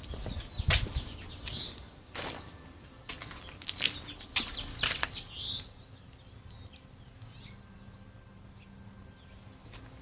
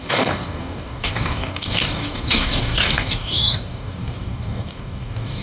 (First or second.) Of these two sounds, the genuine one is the first